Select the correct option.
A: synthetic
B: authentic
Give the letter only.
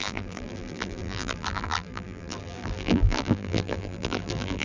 A